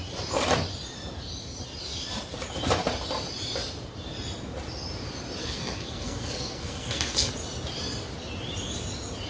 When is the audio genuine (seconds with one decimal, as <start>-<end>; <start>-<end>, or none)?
0.0-5.4; 7.3-9.3